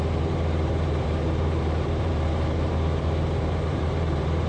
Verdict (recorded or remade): remade